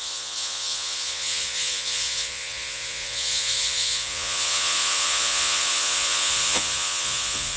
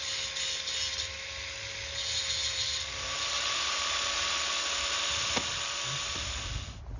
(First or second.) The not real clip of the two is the first